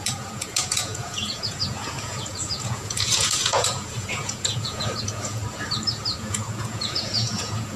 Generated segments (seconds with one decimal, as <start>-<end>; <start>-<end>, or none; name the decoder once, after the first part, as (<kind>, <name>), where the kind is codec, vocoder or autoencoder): 0.0-5.4 (vocoder, Vocos); 6.2-7.8